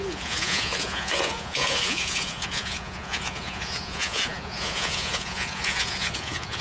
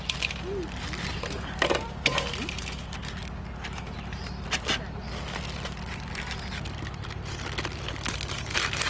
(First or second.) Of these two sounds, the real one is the second